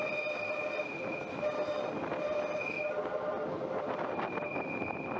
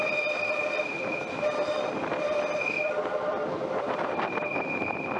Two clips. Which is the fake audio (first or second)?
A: second